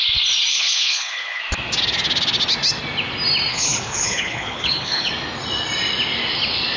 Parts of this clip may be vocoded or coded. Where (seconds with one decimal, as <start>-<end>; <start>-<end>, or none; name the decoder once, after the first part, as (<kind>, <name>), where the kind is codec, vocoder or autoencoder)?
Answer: 0.5-1.4 (codec, HILCodec); 3.5-5.1